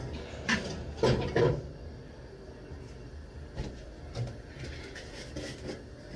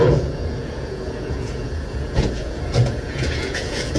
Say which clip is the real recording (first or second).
first